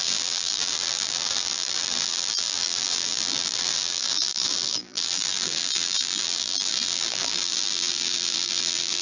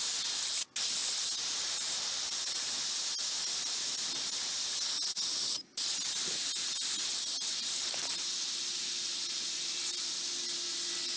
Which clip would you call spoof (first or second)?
first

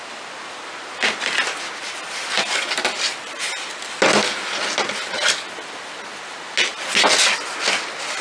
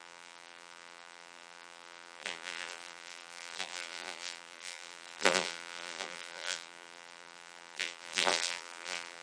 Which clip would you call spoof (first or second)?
second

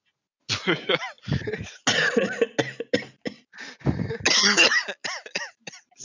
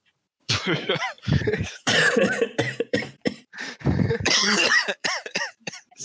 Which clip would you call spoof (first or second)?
second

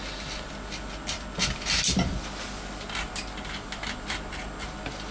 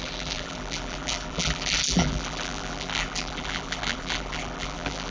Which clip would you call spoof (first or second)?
second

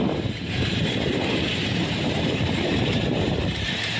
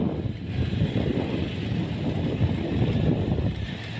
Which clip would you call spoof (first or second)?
first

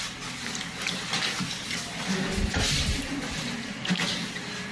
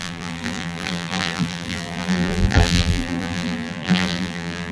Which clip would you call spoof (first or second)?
second